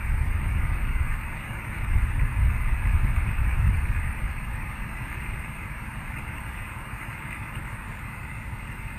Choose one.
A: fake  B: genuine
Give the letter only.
A